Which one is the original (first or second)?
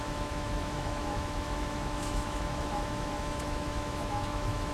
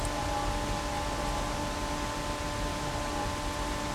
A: second